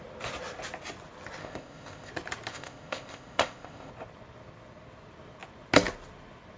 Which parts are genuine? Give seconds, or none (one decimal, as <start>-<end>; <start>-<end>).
0.0-1.4; 2.1-2.5; 3.9-6.6